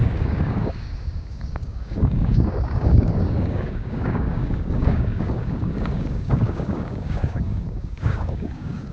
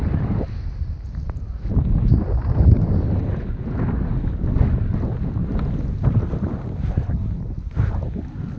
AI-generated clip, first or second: first